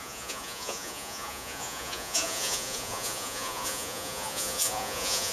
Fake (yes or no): yes